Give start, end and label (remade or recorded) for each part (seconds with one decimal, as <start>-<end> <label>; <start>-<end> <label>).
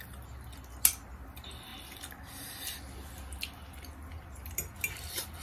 0.0-5.4 recorded